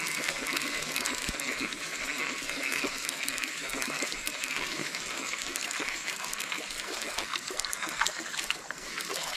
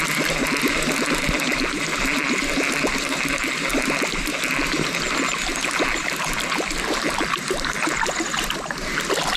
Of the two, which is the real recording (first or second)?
second